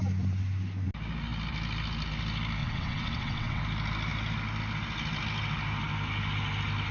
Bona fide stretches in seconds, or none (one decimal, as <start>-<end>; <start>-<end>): 0.0-2.6; 3.6-6.9